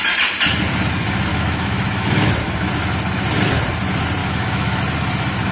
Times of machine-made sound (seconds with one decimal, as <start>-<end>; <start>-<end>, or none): 1.3-2.3; 4.2-4.8